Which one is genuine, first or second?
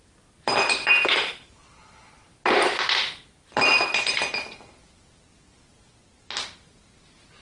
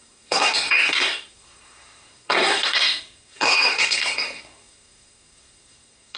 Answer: first